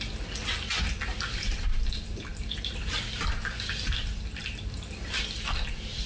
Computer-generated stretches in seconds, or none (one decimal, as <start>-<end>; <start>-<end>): none